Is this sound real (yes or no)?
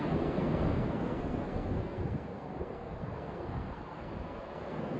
no